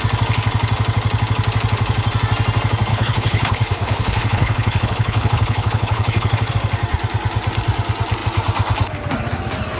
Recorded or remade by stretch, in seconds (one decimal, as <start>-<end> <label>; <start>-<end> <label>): 0.0-2.9 recorded; 2.9-6.5 remade; 6.5-9.8 recorded